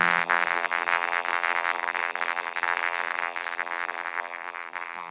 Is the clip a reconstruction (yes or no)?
yes